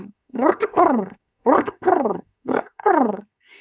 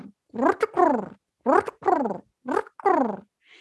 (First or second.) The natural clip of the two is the second